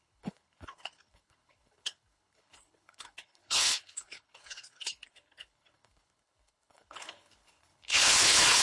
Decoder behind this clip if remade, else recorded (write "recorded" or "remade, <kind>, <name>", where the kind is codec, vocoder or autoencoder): remade, codec, HILCodec